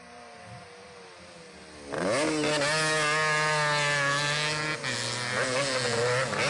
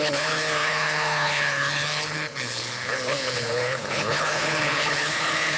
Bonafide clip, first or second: first